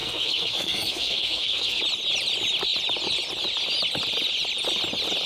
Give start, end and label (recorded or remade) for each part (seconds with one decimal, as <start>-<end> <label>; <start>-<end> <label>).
0.0-1.8 remade; 1.8-5.3 recorded